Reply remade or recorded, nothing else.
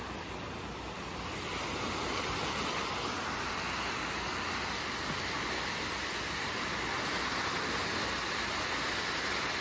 recorded